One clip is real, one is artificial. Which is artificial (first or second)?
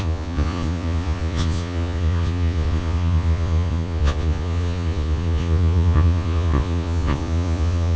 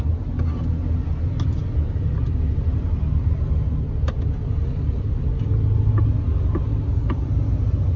first